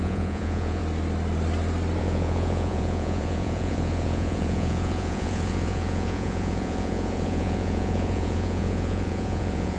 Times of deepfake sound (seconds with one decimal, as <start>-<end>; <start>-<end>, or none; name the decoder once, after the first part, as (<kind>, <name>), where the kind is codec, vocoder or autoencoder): 0.0-0.8 (vocoder, Vocos); 2.0-9.8